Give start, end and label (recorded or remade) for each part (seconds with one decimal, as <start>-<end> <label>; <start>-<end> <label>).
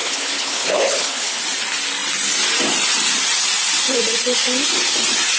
0.0-1.4 remade; 1.4-5.4 recorded